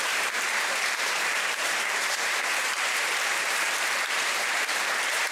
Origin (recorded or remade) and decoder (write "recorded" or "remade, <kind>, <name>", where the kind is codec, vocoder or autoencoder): remade, vocoder, BigVGAN v2